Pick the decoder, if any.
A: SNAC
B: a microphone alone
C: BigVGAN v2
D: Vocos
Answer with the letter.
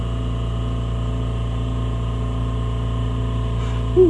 B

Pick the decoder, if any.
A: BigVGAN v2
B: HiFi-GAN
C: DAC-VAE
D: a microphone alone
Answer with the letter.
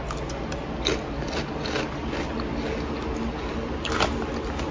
D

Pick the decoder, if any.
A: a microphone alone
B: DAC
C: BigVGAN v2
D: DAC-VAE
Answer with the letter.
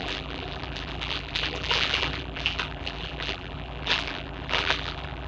C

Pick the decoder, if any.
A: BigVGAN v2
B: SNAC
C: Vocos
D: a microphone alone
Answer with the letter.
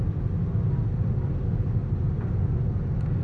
D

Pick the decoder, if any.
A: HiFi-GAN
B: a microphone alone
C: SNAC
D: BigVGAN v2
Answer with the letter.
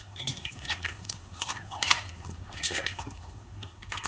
C